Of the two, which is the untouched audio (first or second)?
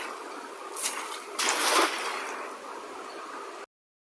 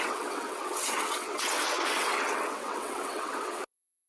first